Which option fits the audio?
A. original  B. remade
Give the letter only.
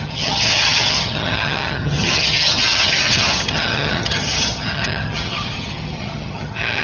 B